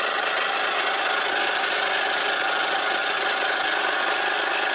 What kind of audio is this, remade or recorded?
recorded